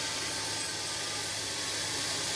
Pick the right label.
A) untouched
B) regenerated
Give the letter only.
A